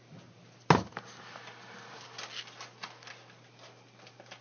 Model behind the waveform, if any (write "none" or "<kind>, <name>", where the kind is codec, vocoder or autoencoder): none